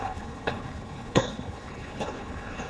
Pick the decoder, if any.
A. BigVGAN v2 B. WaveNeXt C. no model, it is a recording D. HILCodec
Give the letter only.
D